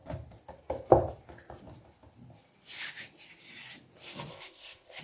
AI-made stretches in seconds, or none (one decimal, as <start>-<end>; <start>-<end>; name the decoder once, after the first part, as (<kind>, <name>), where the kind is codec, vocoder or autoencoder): 4.3-5.0 (codec, ZipCodec)